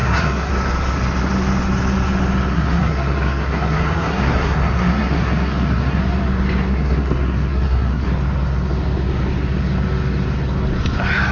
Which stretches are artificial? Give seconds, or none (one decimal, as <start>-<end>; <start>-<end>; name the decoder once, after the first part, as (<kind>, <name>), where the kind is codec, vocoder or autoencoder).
0.0-0.5 (codec, SNAC); 2.5-6.0; 6.7-8.1